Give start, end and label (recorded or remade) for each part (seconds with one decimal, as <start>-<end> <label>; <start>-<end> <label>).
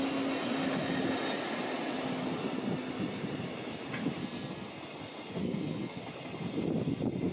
0.0-4.2 recorded; 4.2-4.7 remade; 4.7-5.4 recorded; 5.4-6.0 remade; 6.0-7.3 recorded